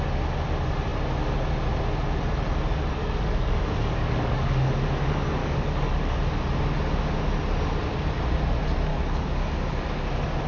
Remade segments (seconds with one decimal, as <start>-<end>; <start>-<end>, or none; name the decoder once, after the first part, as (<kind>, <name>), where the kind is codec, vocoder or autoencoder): 3.0-4.7 (codec, DAC); 5.4-6.2; 8.9-9.9